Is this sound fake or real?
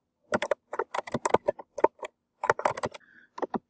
real